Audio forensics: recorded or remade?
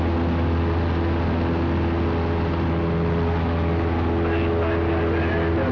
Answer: recorded